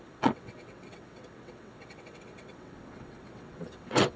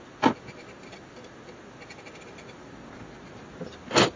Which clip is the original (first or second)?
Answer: second